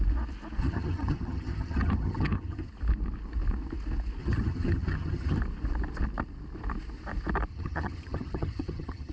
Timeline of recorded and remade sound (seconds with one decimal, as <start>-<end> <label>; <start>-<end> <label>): 0.0-0.6 recorded; 0.6-2.7 remade; 2.7-4.2 recorded; 4.2-5.4 remade; 5.4-7.5 recorded; 7.5-9.1 remade